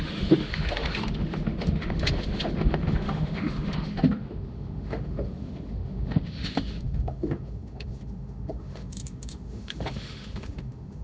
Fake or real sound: fake